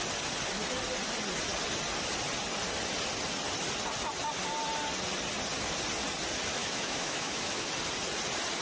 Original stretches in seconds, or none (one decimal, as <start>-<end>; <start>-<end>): 0.0-6.6; 7.7-8.6